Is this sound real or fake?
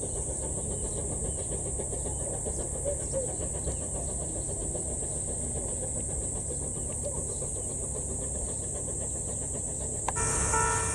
real